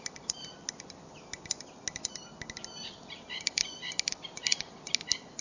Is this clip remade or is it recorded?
recorded